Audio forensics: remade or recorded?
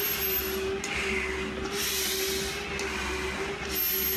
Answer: recorded